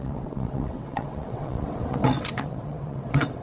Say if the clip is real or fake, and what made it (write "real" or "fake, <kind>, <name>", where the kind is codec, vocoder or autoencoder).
fake, vocoder, WaveNeXt